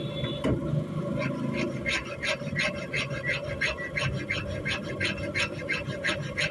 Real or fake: real